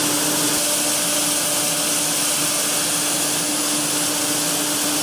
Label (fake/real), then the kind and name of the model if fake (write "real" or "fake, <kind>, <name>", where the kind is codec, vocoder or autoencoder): real